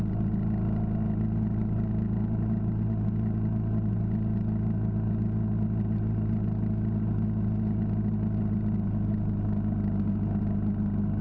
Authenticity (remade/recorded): recorded